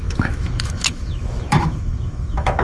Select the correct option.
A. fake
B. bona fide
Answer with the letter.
A